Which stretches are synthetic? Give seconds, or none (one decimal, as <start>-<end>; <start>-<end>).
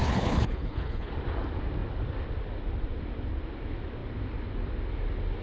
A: 0.0-1.1